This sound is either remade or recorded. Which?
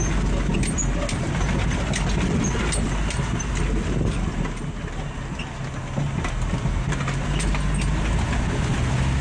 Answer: recorded